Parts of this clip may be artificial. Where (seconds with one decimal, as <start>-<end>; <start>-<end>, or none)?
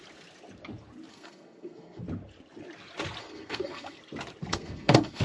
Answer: 1.1-2.0; 3.2-4.0; 4.5-5.2